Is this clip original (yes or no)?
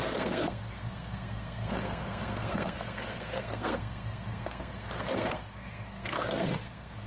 no